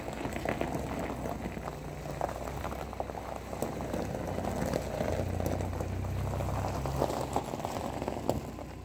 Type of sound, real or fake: real